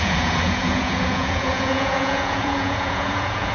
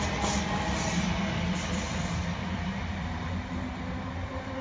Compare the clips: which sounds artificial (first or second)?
first